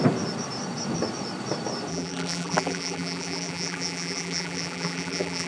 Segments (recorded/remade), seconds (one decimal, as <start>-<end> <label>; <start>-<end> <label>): 0.0-1.9 recorded; 1.9-5.5 remade